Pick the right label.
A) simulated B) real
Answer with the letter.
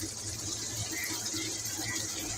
B